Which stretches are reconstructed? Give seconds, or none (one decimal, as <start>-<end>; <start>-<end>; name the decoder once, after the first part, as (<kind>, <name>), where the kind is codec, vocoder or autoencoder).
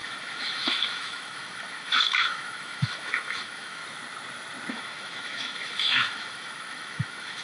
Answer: 0.0-3.8 (autoencoder, DAC-VAE); 4.7-7.4